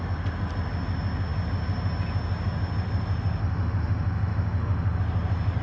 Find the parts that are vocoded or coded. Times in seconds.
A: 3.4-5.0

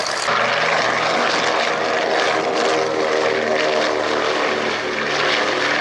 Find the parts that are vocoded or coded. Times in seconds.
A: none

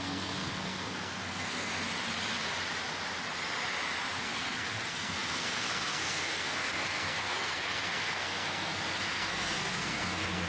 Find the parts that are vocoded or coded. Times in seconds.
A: 0.0-1.7; 4.2-10.5